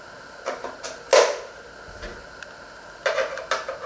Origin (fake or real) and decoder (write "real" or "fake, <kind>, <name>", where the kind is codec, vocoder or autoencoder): real